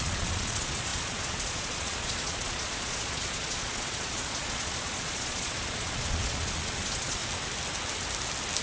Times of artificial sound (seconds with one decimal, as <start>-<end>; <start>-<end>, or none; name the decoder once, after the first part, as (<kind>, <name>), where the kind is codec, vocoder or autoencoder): 0.0-7.2 (vocoder, Vocos)